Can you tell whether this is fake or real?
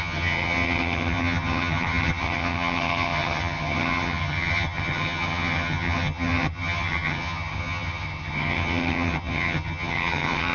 fake